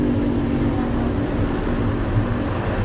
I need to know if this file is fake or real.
real